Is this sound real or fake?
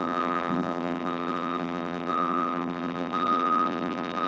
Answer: fake